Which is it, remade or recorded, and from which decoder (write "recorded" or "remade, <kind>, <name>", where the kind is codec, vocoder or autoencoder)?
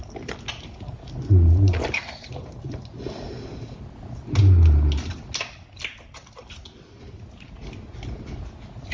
recorded